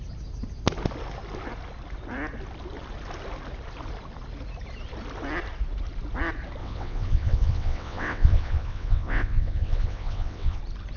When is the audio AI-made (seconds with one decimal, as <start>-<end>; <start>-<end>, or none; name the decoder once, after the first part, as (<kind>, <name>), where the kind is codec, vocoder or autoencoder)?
6.6-10.6 (vocoder, WaveNeXt)